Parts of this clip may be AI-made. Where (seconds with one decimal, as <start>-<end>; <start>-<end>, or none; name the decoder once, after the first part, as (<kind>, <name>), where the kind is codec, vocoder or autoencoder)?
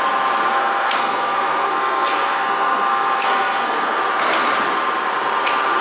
0.5-4.0 (codec, SNAC)